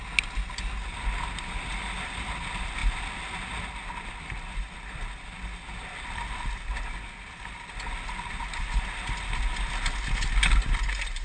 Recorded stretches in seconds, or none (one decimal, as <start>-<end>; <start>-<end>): 0.0-11.2